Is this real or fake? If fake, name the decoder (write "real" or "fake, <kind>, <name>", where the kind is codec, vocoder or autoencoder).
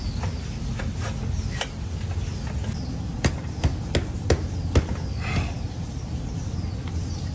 real